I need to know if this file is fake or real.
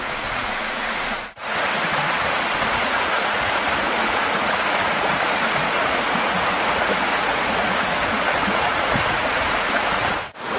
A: fake